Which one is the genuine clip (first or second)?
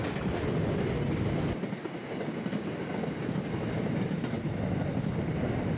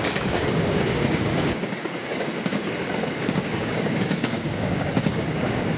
first